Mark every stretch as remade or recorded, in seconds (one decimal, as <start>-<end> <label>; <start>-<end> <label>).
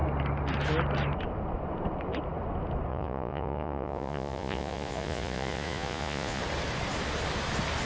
0.0-2.9 recorded; 2.9-6.4 remade; 6.4-7.9 recorded